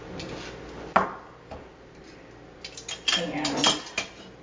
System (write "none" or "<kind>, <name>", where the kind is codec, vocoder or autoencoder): none